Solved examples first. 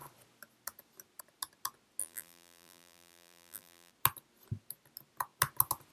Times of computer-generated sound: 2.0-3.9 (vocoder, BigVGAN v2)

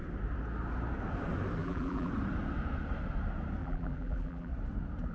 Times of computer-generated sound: 1.6-2.1 (vocoder, BigVGAN v2); 3.6-4.5

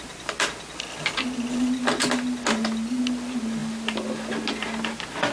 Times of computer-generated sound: none

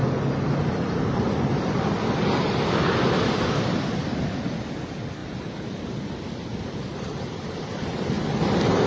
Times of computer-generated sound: 0.0-0.6 (vocoder, BigVGAN v2); 5.2-5.9